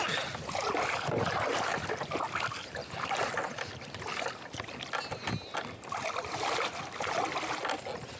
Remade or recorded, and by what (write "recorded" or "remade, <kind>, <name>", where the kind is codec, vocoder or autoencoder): recorded